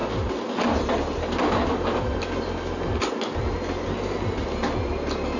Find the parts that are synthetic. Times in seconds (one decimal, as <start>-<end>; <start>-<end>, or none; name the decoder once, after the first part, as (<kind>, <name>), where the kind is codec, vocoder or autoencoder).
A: none